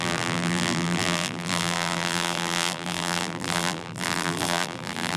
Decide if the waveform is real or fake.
fake